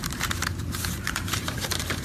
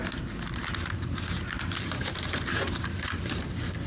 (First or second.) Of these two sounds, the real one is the second